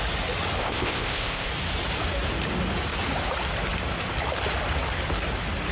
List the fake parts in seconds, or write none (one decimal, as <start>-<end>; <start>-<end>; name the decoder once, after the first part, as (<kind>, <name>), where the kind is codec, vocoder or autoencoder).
0.6-1.5 (codec, ZipCodec)